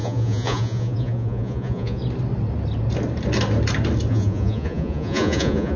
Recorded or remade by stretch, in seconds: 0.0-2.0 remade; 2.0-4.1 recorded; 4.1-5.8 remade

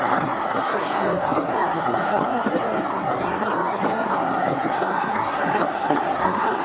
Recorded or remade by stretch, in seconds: 0.0-6.6 remade

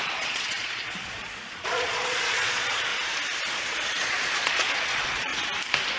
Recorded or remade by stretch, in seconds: 0.0-2.9 remade; 2.9-3.6 recorded; 3.6-5.3 remade; 5.3-6.0 recorded